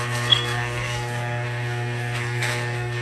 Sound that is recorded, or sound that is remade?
remade